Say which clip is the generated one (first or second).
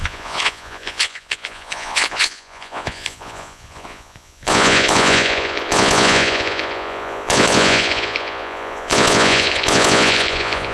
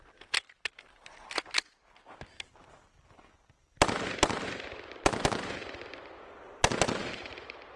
first